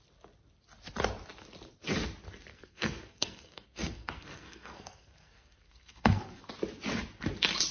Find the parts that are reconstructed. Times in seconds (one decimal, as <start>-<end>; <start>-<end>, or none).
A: 2.5-6.4